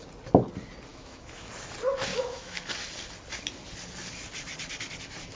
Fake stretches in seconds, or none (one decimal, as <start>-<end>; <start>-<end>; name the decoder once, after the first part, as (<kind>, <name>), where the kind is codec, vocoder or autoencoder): 0.9-1.5 (autoencoder, DAC-VAE); 2.1-2.6